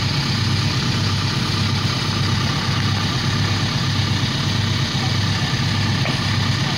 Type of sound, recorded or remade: recorded